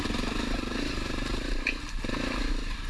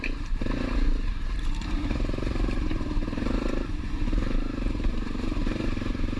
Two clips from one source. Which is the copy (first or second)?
second